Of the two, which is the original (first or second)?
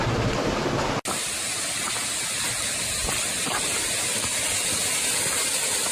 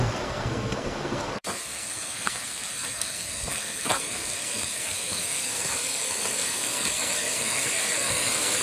first